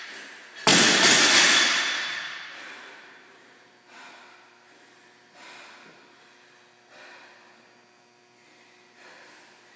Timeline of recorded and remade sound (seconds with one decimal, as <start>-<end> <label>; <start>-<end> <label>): 0.0-9.8 recorded